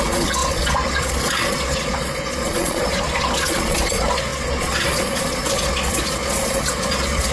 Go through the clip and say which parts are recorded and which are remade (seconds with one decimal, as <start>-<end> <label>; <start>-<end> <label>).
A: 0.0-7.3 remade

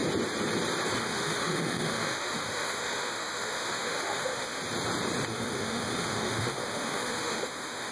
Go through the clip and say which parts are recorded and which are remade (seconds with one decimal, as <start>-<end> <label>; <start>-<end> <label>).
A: 0.0-1.0 recorded; 1.0-4.6 remade; 4.6-5.3 recorded; 5.3-7.9 remade

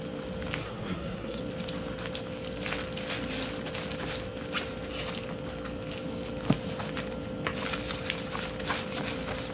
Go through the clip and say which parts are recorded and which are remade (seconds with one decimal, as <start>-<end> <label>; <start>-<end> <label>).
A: 0.0-0.6 recorded; 0.6-1.4 remade; 1.4-9.5 recorded

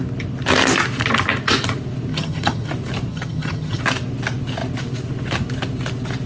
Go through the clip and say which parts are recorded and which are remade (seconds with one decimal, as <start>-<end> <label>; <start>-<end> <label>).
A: 0.0-2.1 recorded; 2.1-2.7 remade; 2.7-3.1 recorded; 3.1-3.8 remade; 3.8-6.3 recorded

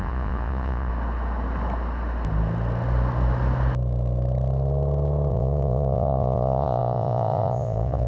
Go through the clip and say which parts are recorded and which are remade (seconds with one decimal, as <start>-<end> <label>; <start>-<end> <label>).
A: 0.0-0.9 remade; 0.9-5.3 recorded; 5.3-8.1 remade

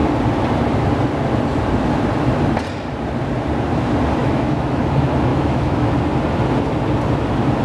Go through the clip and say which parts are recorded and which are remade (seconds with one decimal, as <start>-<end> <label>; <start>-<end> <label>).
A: 0.0-4.2 recorded; 4.2-4.8 remade; 4.8-5.3 recorded; 5.3-5.9 remade; 5.9-7.6 recorded

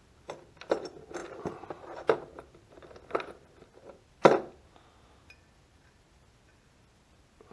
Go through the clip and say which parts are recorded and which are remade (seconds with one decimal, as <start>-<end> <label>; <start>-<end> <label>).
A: 0.0-7.5 recorded

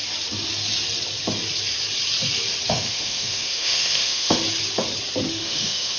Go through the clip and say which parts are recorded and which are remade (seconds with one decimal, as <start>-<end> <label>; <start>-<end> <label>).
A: 0.0-2.7 recorded; 2.7-4.4 remade; 4.4-5.3 recorded; 5.3-6.0 remade